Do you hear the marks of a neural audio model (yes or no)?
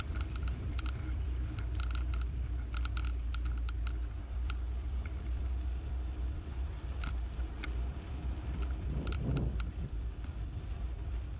yes